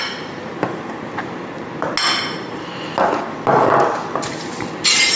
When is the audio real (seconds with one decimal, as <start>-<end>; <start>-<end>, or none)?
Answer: 0.5-2.2; 2.7-4.3